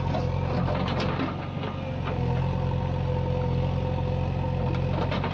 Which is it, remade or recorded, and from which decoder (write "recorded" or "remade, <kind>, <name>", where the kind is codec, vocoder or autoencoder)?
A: recorded